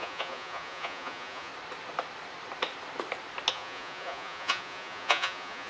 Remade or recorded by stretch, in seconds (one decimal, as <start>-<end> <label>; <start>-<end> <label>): 0.0-1.5 remade; 1.5-3.5 recorded; 3.5-5.7 remade